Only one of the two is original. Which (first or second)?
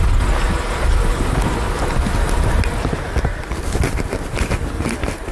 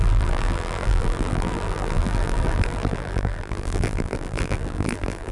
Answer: first